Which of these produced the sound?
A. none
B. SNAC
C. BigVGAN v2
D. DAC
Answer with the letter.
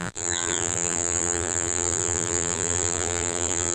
C